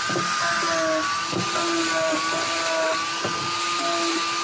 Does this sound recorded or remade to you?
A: recorded